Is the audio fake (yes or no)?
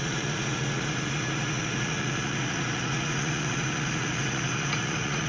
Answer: yes